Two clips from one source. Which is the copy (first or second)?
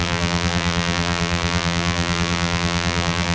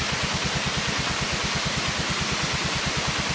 first